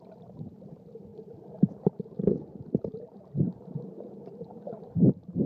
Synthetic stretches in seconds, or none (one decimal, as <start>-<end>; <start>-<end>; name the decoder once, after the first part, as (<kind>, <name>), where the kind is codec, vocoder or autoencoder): 0.0-5.5 (vocoder, BigVGAN v2)